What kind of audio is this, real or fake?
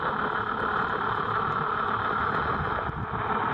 real